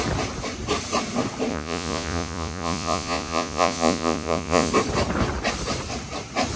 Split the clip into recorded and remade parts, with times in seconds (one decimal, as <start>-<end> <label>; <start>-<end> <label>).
0.0-1.5 recorded; 1.5-4.7 remade; 4.7-6.6 recorded